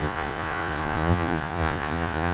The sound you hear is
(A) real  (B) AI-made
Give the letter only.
B